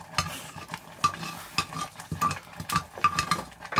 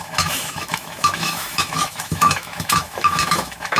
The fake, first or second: second